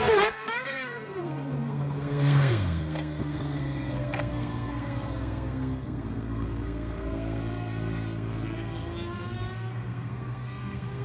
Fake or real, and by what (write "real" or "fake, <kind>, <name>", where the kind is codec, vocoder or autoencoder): fake, codec, SNAC